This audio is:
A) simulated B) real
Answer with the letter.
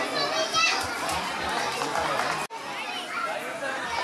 B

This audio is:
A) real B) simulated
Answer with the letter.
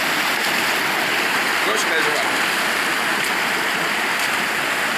A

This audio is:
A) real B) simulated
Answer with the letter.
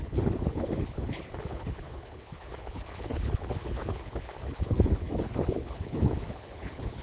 B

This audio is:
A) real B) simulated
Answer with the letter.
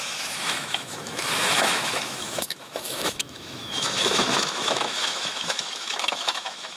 B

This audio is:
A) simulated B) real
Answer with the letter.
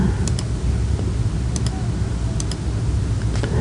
B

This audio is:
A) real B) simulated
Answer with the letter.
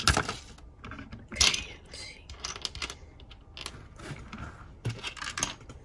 A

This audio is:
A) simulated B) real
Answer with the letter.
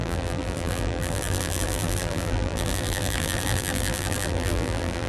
A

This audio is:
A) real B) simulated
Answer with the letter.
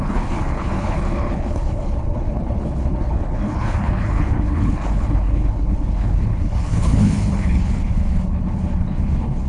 B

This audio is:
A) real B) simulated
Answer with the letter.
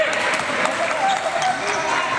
B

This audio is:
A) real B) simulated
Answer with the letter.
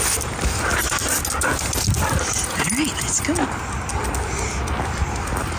A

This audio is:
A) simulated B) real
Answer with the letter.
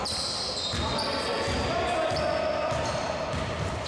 B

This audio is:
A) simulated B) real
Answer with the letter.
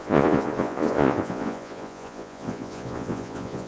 A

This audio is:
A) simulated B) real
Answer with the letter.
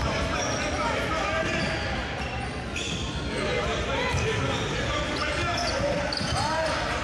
B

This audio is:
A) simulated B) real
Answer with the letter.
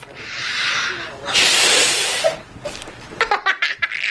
B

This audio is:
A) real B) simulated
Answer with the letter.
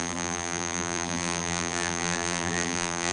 B